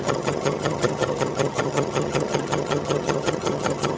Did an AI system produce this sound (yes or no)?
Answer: yes